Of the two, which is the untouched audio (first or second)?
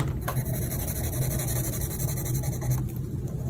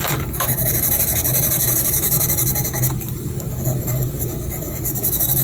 first